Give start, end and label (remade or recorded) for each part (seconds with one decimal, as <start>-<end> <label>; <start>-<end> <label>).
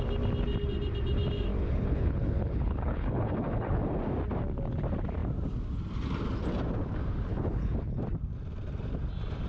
0.0-1.5 recorded; 1.5-4.0 remade; 4.0-7.3 recorded; 7.3-8.0 remade; 8.0-9.5 recorded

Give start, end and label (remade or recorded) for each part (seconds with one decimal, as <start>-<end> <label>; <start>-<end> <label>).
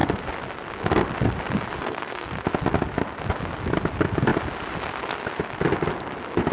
0.0-1.8 recorded; 1.8-2.3 remade; 2.3-6.5 recorded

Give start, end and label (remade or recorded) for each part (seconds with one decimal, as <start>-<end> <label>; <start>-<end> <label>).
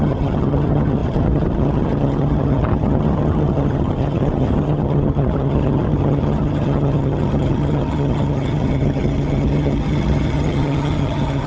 0.0-11.5 remade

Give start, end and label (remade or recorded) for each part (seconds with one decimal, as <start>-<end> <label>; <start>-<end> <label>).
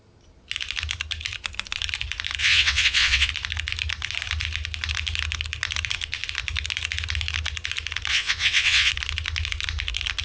0.0-2.4 recorded; 2.4-3.3 remade; 3.3-8.1 recorded; 8.1-8.9 remade; 8.9-10.2 recorded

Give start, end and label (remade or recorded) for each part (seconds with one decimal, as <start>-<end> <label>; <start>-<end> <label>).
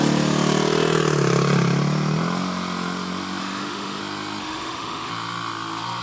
0.0-3.4 recorded; 3.4-4.0 remade; 4.0-4.4 recorded; 4.4-5.1 remade; 5.1-6.0 recorded